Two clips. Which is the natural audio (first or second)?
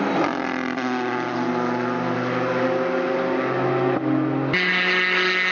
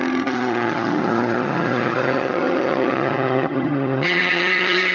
first